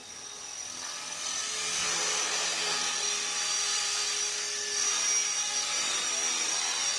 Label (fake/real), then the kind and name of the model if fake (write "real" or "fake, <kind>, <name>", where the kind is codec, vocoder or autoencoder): real